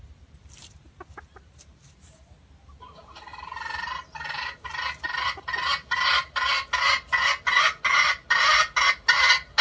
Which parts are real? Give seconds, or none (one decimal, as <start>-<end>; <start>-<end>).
0.0-9.6